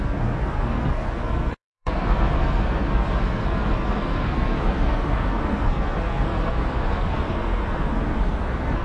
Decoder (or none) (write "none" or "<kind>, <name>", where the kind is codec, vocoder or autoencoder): codec, SNAC